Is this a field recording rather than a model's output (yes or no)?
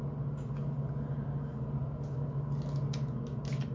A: yes